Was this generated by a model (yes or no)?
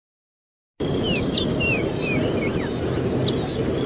no